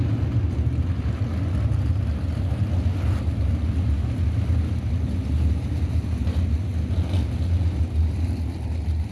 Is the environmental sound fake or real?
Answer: real